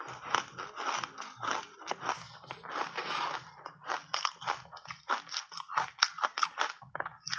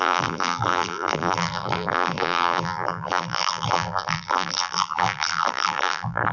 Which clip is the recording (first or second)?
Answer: first